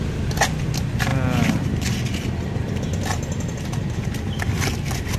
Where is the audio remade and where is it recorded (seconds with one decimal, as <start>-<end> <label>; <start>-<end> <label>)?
0.0-5.2 recorded